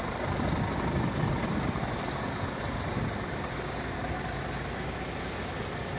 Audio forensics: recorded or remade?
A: recorded